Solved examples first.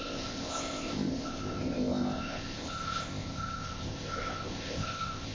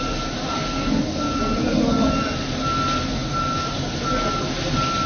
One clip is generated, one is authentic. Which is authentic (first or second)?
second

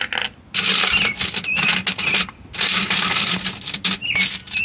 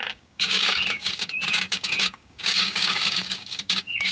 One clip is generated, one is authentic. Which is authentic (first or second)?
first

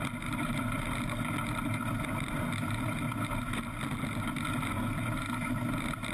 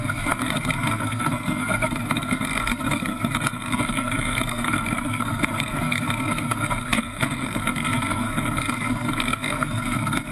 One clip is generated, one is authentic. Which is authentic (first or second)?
first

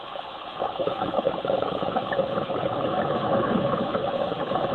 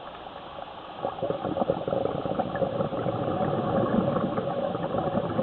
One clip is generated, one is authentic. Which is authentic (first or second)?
second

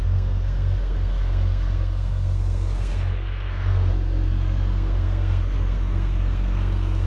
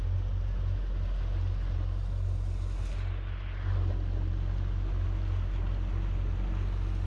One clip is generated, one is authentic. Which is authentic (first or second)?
second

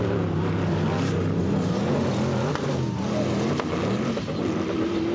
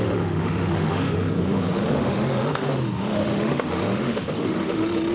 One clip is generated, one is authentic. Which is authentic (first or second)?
first